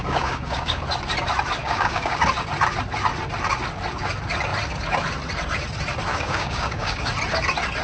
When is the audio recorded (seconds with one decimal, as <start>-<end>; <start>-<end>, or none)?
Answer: 0.8-1.6; 2.2-6.1; 7.1-7.8